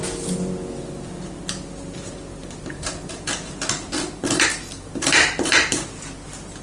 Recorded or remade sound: recorded